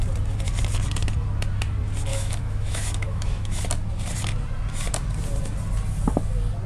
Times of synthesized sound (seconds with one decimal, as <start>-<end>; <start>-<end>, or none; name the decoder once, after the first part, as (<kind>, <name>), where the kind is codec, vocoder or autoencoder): 2.1-3.6 (autoencoder, DAC-VAE)